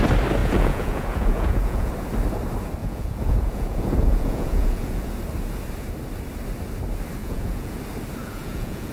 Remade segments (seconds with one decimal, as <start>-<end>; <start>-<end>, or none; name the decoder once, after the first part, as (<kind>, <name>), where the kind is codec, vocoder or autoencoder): 0.4-1.9 (vocoder, Vocos); 2.8-5.1; 7.2-7.8; 8.2-8.9